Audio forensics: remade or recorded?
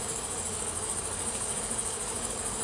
remade